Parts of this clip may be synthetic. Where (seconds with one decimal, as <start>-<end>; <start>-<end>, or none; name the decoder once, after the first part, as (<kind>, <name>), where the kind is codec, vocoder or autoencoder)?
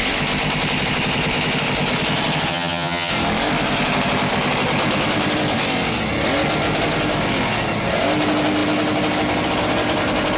2.5-3.1 (vocoder, HiFi-GAN)